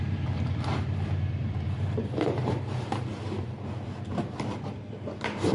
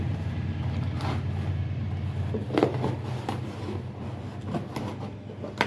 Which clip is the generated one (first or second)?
first